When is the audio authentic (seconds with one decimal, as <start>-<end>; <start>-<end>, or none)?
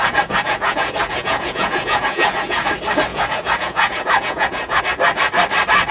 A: 2.7-3.1; 4.8-5.9